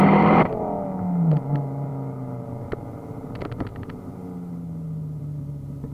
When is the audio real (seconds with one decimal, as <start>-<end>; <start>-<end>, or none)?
0.0-5.9